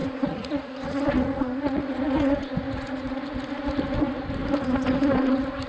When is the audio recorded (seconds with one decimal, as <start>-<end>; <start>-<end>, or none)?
3.2-5.7